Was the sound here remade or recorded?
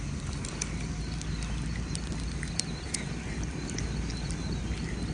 recorded